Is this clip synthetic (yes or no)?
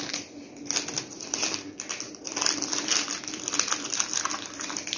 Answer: no